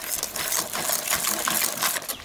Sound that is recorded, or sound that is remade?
recorded